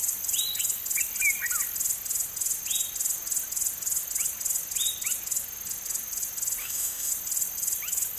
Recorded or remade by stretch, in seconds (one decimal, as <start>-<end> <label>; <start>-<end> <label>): 0.0-6.6 recorded; 6.6-7.1 remade; 7.1-8.2 recorded